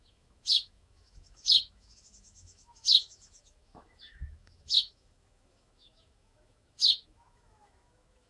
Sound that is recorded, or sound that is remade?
remade